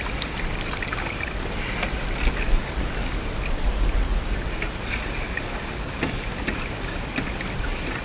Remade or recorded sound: recorded